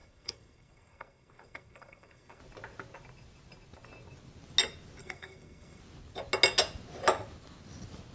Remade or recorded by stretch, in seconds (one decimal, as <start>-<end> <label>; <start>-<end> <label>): 0.0-2.4 remade; 2.4-5.0 recorded; 5.0-5.8 remade; 5.8-8.1 recorded